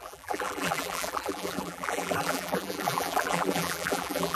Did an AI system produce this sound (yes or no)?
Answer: yes